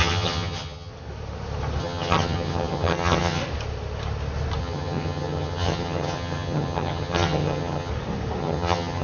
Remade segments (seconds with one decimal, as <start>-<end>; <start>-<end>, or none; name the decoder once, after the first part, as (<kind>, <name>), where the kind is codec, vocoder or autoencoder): 0.0-0.9 (vocoder, HiFi-GAN); 1.8-3.4; 4.6-7.9; 8.4-9.0